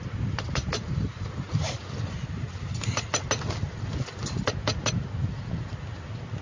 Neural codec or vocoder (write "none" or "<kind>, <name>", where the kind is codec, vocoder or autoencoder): none